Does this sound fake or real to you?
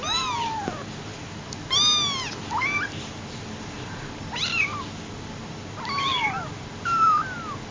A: real